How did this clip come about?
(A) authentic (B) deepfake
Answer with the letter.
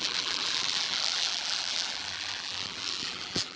B